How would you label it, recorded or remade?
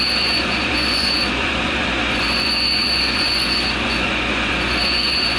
remade